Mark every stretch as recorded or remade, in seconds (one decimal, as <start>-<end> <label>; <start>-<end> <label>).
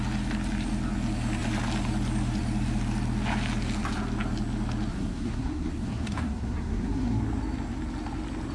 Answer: 0.0-4.9 recorded; 4.9-7.2 remade; 7.2-8.5 recorded